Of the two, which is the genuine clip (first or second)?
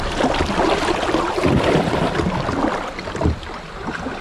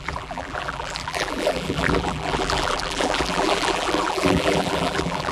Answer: first